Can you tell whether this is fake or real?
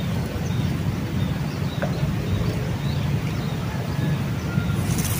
real